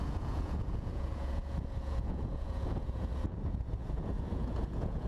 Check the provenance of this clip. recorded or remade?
remade